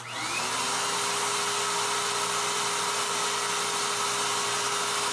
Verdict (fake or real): real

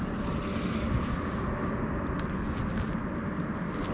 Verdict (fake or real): real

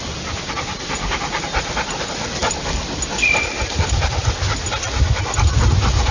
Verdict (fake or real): real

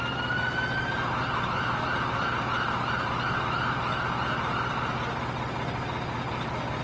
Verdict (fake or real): real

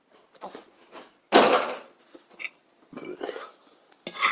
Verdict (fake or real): real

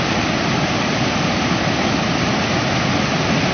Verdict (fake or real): real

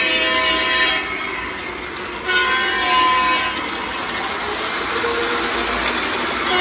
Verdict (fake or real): real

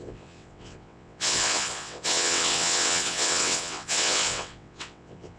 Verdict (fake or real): fake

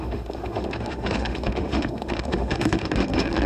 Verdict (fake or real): fake